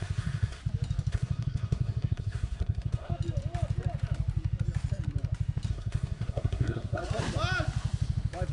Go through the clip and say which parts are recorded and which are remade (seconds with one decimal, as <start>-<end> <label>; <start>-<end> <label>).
0.0-0.6 remade; 0.6-1.1 recorded; 1.1-3.1 remade; 3.1-5.7 recorded; 5.7-7.0 remade; 7.0-8.5 recorded